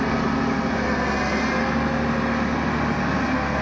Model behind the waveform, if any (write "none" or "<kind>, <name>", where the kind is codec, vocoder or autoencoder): none